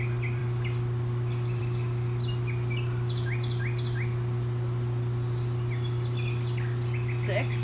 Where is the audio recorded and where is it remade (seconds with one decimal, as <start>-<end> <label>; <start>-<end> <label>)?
0.0-7.6 recorded